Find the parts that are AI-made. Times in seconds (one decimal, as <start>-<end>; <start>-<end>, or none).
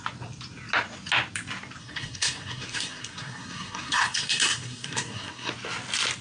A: 1.8-5.5